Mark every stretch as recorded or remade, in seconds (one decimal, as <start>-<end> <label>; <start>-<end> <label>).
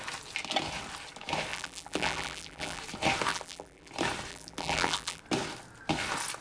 0.0-1.5 recorded; 1.5-2.8 remade; 2.8-3.3 recorded; 3.3-3.9 remade; 3.9-4.3 recorded; 4.3-5.2 remade; 5.2-6.4 recorded